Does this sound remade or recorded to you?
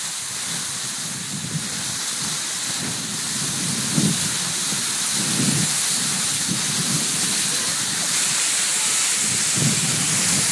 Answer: recorded